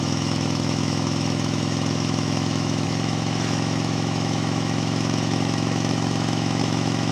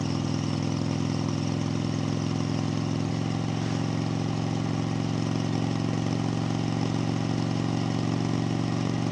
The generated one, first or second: first